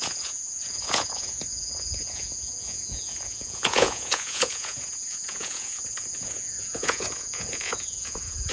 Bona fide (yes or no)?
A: no